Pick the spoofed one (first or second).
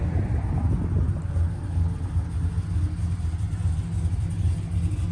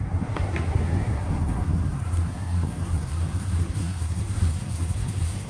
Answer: second